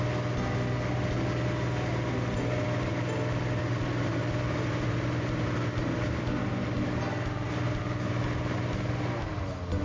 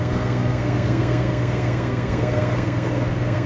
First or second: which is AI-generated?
second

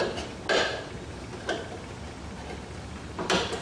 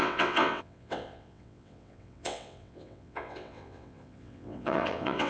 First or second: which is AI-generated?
second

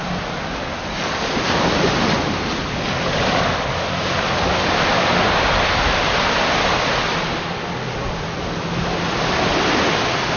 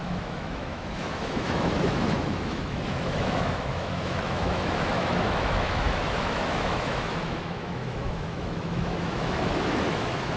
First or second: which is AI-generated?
second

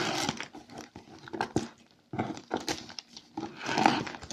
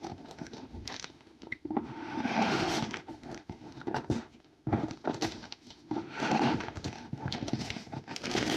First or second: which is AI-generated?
second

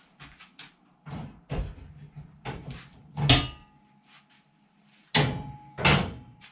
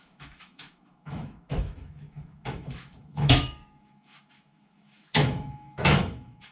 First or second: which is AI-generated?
second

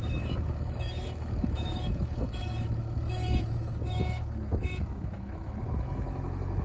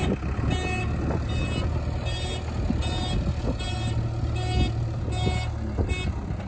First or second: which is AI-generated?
first